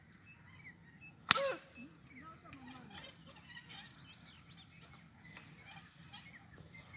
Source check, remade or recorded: recorded